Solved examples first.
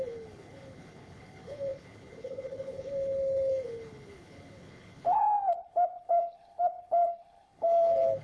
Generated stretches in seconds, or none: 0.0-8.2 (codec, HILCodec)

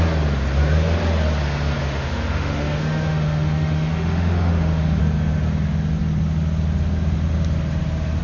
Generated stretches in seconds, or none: 1.8-5.0 (autoencoder, DAC-VAE)

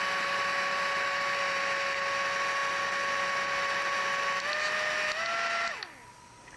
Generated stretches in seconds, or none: none

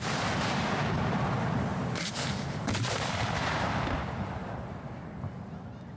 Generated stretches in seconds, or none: none